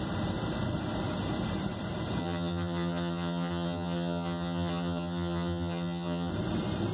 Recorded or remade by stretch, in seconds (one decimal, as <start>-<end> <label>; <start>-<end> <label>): 0.0-2.2 recorded; 2.2-6.3 remade; 6.3-6.9 recorded